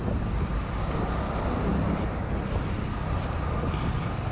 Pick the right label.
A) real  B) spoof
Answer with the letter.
A